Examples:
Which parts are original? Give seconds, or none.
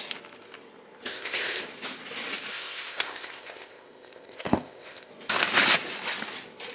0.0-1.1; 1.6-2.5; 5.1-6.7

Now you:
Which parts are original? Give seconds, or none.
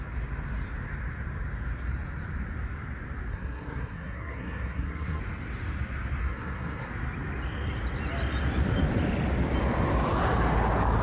0.0-3.3; 5.2-6.2; 6.9-11.0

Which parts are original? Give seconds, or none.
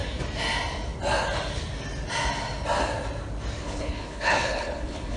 0.0-3.6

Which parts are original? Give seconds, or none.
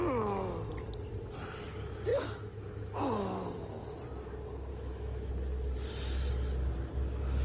0.0-2.1; 3.1-4.7; 5.3-7.4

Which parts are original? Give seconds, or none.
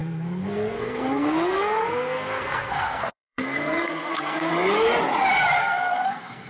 4.5-5.6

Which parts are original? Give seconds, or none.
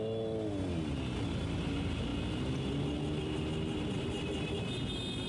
0.0-5.3